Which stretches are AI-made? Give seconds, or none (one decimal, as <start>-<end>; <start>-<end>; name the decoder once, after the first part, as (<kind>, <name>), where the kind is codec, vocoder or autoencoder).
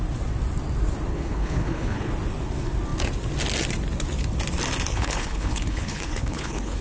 1.1-2.1 (codec, HILCodec); 4.9-6.8